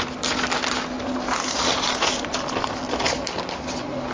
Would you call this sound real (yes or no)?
yes